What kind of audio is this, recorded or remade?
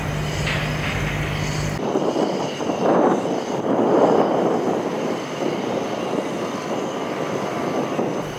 recorded